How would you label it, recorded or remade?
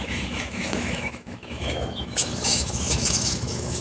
remade